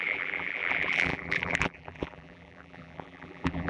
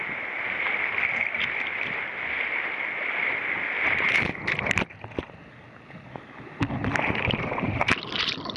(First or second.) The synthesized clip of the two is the first